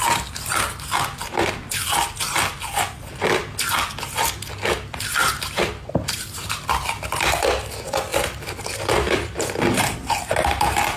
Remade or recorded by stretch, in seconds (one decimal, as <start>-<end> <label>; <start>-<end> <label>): 0.0-5.2 recorded; 5.2-6.7 remade; 6.7-8.1 recorded; 8.1-11.0 remade